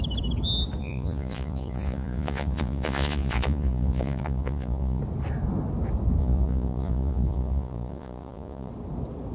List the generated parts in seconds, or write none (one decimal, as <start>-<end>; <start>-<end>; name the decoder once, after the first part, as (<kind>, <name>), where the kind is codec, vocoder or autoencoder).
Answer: 0.8-5.0 (vocoder, Vocos); 6.2-8.7